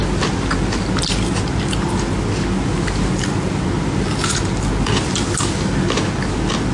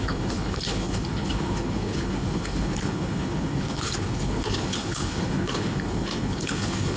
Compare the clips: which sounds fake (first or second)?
second